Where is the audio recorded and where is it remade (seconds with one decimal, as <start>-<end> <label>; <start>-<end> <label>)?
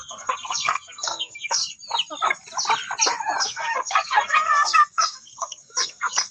0.0-1.6 remade; 1.6-3.4 recorded; 3.4-6.3 remade